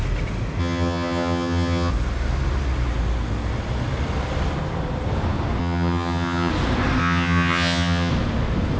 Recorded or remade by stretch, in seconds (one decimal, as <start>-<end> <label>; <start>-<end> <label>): 0.0-0.6 recorded; 0.6-1.9 remade; 1.9-5.6 recorded; 5.6-6.5 remade; 6.5-7.0 recorded; 7.0-8.1 remade; 8.1-8.8 recorded